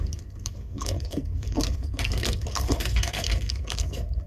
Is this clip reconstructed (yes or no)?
yes